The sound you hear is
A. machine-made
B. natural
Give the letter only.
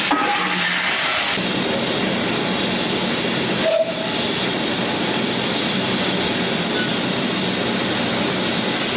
B